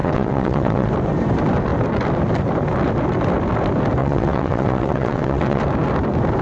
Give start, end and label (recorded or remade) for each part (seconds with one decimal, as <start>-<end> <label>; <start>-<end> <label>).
0.0-0.9 remade; 0.9-4.0 recorded; 4.0-5.6 remade; 5.6-6.4 recorded